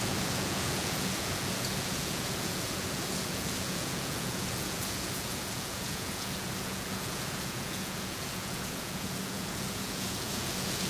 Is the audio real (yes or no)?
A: no